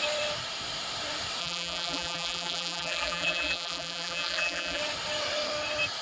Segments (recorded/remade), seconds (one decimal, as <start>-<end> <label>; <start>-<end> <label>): 0.0-1.4 recorded; 1.4-4.8 remade; 4.8-6.0 recorded

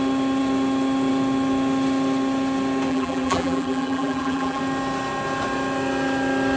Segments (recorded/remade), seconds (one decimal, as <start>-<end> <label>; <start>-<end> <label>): 0.0-2.9 recorded; 2.9-4.6 remade; 4.6-6.6 recorded

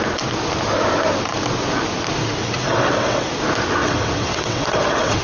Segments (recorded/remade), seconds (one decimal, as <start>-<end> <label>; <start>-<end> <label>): 0.0-2.4 recorded; 2.4-3.3 remade; 3.3-3.8 recorded; 3.8-5.2 remade

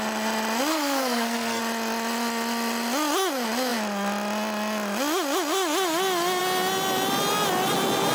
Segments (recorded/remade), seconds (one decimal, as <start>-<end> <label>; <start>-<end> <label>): 0.0-0.7 recorded; 0.7-1.6 remade; 1.6-8.1 recorded

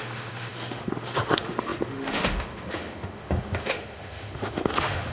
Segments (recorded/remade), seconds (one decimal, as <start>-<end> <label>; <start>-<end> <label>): 0.0-5.1 remade

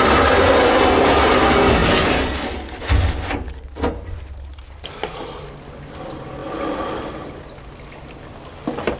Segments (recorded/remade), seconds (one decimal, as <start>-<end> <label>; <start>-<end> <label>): 0.0-9.0 recorded